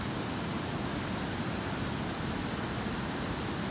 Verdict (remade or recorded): recorded